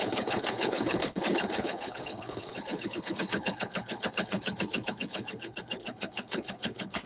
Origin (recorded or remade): remade